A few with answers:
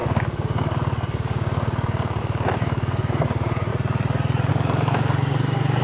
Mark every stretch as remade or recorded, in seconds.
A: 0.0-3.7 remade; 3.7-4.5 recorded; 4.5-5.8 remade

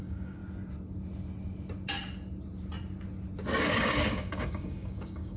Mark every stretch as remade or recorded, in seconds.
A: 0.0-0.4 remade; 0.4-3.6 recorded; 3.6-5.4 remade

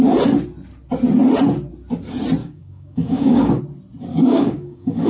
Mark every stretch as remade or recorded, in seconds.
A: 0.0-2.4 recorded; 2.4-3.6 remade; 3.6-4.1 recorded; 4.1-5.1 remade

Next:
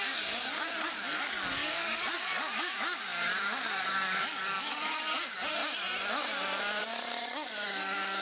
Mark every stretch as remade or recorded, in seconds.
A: 0.0-5.6 remade; 5.6-6.8 recorded; 6.8-8.2 remade